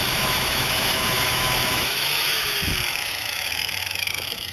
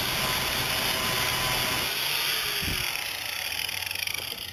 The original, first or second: second